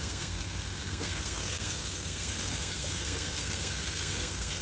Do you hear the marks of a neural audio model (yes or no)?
yes